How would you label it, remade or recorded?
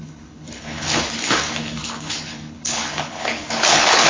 remade